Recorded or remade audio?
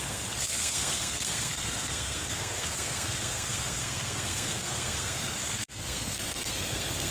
remade